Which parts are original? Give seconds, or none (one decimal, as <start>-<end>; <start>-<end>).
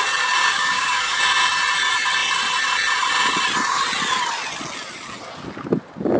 0.0-0.4; 1.2-6.2